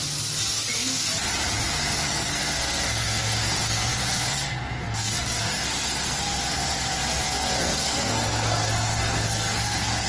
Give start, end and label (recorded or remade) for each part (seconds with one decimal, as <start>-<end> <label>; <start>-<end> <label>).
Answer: 0.0-0.7 recorded; 0.7-1.1 remade; 1.1-1.7 recorded; 1.7-10.1 remade